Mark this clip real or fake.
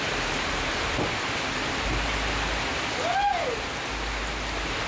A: real